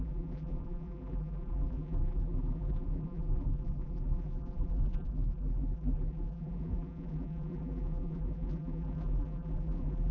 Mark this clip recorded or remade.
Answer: remade